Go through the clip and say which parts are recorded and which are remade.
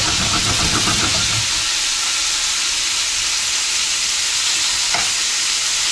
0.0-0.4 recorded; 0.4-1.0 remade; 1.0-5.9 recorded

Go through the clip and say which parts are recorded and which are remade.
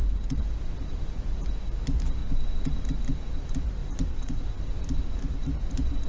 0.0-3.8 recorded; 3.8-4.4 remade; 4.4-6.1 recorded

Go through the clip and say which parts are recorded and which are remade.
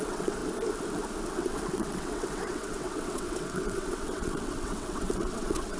0.0-0.4 remade; 0.4-1.3 recorded; 1.3-5.8 remade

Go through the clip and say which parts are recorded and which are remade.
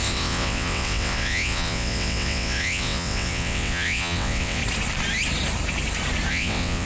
0.0-4.6 remade; 4.6-6.3 recorded; 6.3-6.9 remade